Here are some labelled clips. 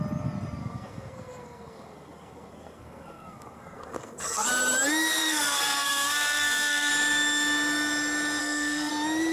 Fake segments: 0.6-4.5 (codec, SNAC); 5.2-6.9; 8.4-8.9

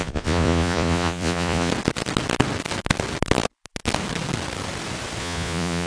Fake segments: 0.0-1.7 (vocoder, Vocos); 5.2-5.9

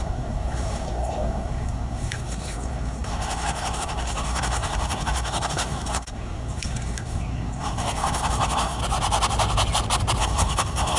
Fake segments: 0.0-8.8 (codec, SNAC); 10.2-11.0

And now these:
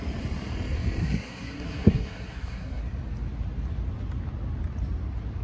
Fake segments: 1.0-2.8 (codec, SNAC)